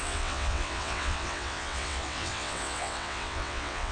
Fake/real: fake